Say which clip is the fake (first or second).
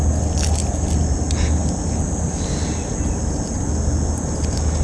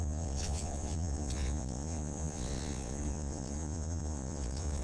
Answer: second